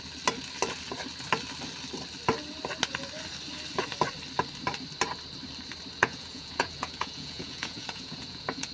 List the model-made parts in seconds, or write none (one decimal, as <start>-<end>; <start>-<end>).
6.0-8.7